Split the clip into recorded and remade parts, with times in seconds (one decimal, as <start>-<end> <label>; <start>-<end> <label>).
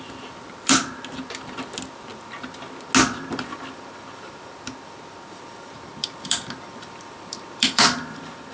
0.0-2.1 remade; 2.1-3.3 recorded; 3.3-8.5 remade